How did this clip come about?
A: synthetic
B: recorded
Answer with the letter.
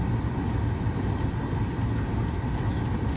B